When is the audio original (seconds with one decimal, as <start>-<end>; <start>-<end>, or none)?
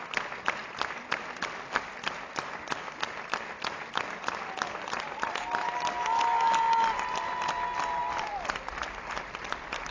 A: 0.0-9.9